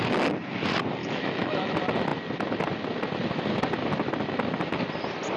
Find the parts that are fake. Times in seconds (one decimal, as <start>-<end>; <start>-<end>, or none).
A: 1.0-1.7